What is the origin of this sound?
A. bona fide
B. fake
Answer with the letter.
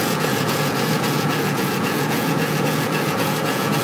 B